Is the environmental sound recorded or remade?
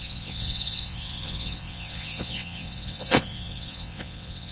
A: remade